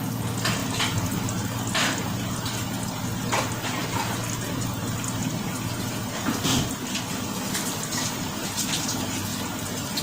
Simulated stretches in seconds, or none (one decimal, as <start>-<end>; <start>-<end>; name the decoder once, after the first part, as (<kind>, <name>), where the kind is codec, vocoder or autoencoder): 6.5-7.1 (vocoder, BigVGAN v2)